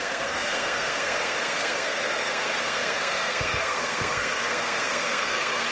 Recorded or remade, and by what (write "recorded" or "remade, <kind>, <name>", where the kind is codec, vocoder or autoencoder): remade, codec, SNAC